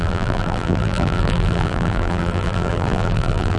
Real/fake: fake